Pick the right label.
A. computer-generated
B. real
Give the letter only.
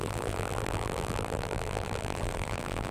A